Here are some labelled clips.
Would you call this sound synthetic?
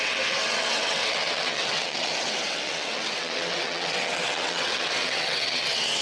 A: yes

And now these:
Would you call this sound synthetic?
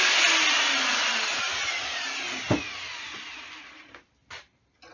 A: no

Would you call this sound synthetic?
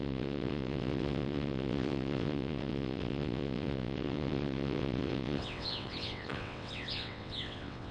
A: yes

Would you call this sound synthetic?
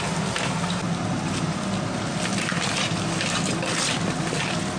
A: no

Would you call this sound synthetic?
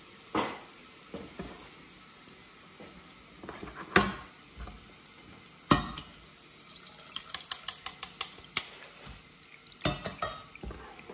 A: no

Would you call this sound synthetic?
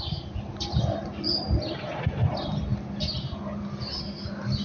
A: no